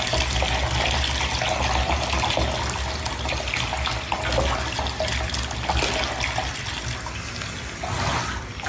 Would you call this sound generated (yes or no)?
no